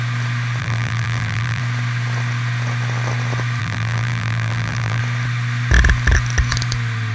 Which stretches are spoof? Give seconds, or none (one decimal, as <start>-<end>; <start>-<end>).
0.6-1.6; 3.6-5.0